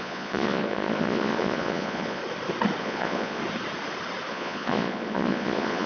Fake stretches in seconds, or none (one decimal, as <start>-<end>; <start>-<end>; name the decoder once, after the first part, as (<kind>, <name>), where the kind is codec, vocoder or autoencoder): 0.0-2.2 (vocoder, Vocos); 2.8-3.4; 4.3-5.9